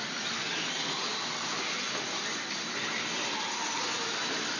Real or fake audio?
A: real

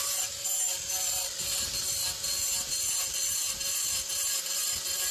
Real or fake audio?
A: real